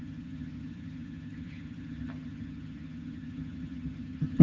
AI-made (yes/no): yes